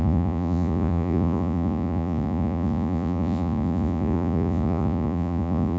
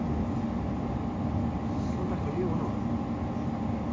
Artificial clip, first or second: first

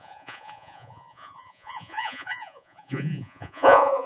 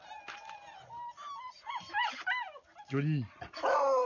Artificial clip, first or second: first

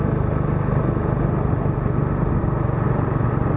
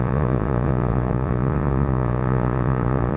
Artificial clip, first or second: second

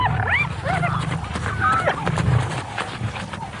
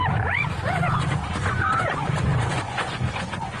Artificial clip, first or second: second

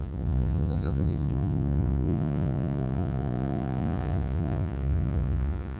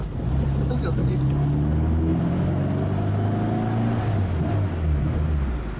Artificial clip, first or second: first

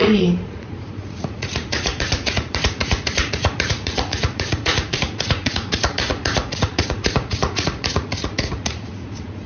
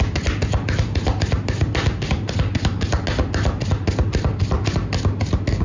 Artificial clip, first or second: first